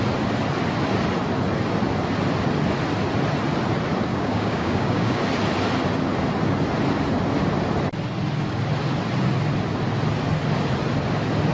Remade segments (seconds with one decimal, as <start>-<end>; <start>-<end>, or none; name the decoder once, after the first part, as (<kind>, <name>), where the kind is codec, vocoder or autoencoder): 4.1-5.2 (codec, DAC)